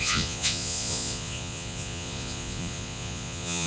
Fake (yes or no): yes